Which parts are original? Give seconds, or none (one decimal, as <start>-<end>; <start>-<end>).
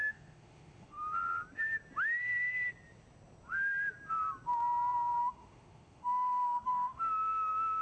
1.0-5.2